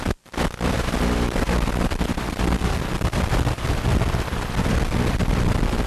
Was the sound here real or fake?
fake